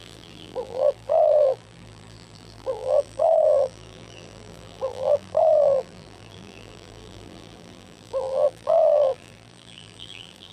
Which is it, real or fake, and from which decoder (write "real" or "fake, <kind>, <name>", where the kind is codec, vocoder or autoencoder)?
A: fake, vocoder, BigVGAN v2